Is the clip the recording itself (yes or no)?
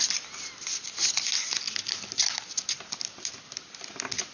yes